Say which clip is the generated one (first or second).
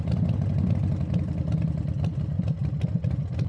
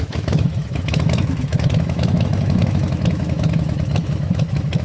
second